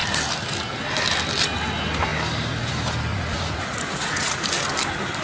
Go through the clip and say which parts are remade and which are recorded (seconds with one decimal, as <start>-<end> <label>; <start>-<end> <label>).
0.0-3.1 recorded; 3.1-4.4 remade; 4.4-5.2 recorded